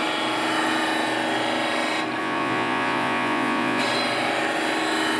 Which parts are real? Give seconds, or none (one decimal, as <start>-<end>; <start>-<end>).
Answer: 0.0-2.2; 3.8-5.2